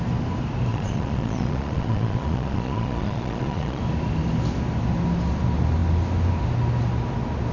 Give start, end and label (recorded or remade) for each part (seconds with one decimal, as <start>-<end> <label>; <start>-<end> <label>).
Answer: 0.0-0.7 recorded; 0.7-3.8 remade; 3.8-7.5 recorded